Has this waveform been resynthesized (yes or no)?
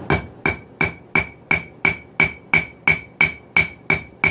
no